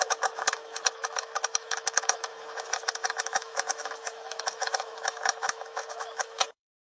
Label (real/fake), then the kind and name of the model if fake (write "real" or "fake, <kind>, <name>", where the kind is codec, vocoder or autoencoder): fake, autoencoder, DAC-VAE